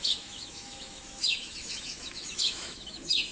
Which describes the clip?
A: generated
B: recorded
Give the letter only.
A